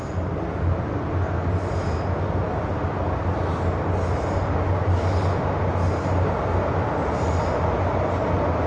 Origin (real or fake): real